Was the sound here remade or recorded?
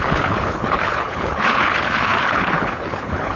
remade